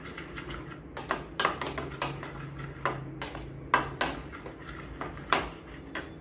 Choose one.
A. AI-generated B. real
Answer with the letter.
B